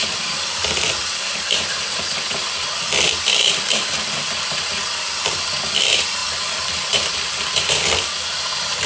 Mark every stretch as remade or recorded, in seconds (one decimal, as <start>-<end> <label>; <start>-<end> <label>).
0.0-8.9 remade